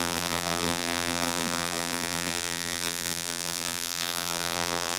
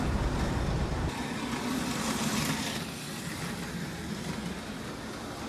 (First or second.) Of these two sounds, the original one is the second